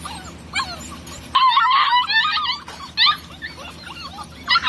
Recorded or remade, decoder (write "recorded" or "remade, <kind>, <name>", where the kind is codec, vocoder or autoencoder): recorded